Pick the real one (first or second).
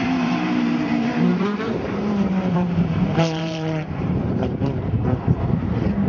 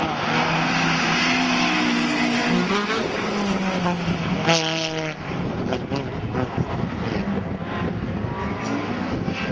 second